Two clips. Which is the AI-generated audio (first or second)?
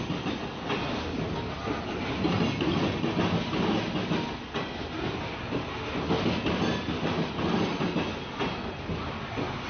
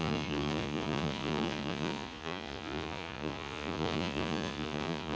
second